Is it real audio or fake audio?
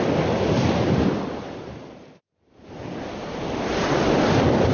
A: real